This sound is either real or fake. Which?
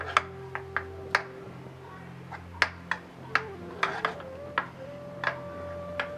real